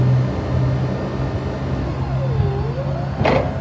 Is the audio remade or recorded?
recorded